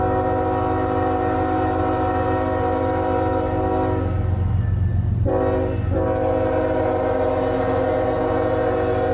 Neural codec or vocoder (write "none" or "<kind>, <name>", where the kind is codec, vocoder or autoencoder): none